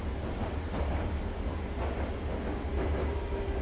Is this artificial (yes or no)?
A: no